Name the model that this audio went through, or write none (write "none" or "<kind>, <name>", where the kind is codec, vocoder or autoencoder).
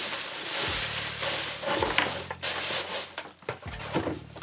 none